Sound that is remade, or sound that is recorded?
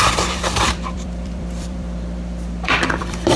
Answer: remade